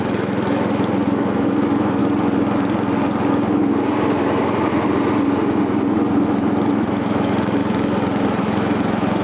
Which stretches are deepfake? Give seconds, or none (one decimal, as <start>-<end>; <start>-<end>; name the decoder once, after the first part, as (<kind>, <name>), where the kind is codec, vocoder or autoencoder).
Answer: 0.0-2.0 (autoencoder, DAC-VAE); 6.7-7.6; 8.4-9.2